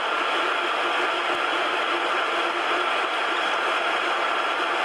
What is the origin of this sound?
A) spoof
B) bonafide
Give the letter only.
B